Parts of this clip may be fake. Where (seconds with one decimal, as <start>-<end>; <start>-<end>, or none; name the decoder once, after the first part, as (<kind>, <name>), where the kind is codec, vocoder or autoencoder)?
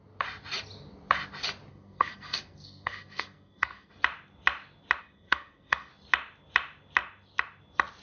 1.7-3.9 (codec, SNAC); 5.0-5.9